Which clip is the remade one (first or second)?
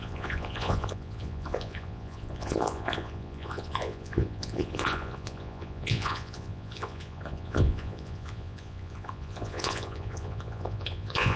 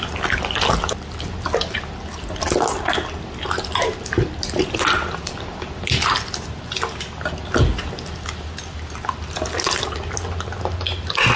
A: first